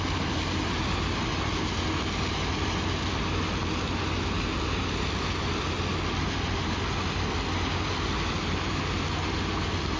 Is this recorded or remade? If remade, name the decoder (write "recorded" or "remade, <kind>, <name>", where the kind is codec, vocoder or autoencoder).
recorded